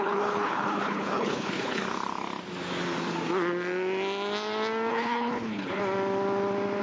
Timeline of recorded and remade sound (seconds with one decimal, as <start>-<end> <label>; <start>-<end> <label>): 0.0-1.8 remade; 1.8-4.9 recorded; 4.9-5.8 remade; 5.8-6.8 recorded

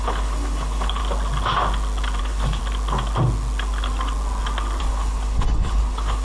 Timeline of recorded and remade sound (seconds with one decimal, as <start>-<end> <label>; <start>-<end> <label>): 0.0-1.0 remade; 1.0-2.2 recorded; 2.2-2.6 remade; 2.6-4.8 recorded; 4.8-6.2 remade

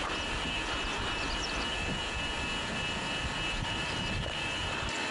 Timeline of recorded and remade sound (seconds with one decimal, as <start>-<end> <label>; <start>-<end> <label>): 0.0-5.1 recorded

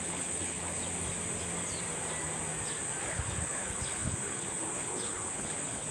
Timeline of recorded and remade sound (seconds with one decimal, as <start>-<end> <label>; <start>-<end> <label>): 0.0-0.8 remade; 0.8-3.0 recorded; 3.0-5.9 remade

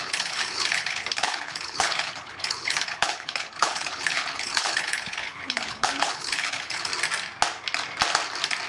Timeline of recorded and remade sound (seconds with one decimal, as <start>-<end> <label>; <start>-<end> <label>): 0.0-6.9 remade; 6.9-8.7 recorded